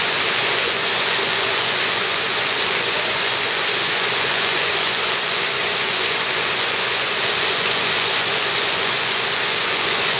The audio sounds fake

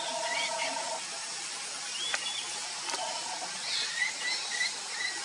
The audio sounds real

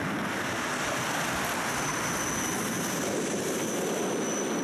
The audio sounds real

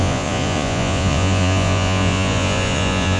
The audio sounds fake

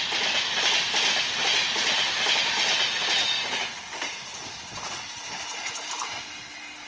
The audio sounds real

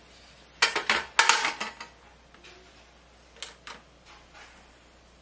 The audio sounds real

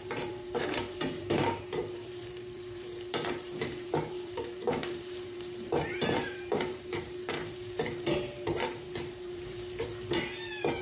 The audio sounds fake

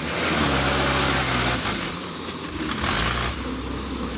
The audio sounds real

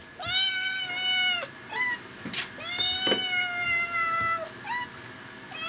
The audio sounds real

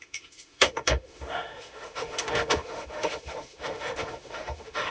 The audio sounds fake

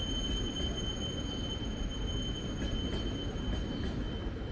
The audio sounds fake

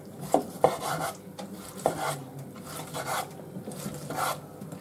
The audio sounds real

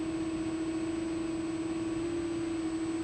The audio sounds real